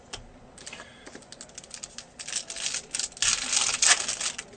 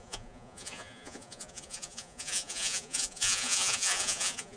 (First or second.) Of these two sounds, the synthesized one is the second